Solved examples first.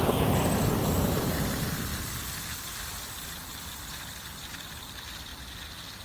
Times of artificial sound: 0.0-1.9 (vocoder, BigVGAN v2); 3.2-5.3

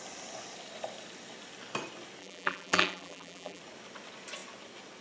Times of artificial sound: 2.2-3.6 (vocoder, BigVGAN v2)

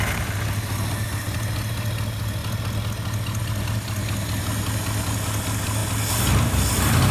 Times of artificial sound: none

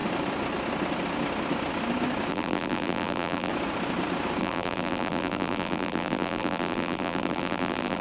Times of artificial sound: 2.3-3.5 (vocoder, BigVGAN v2); 4.4-8.0